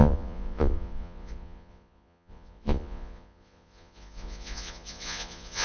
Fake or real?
fake